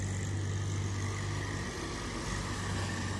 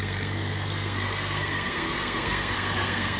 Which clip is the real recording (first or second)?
first